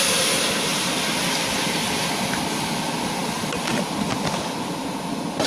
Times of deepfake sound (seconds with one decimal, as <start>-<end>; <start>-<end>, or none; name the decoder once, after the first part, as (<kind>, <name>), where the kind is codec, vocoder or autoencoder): none